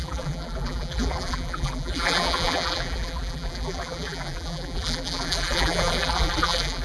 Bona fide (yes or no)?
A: no